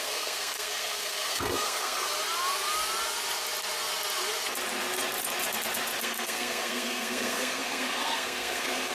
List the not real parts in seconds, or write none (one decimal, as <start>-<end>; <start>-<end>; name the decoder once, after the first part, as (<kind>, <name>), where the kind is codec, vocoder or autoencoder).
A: 0.0-2.1 (codec, SNAC); 6.0-8.9